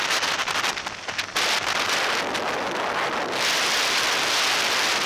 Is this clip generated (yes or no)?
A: no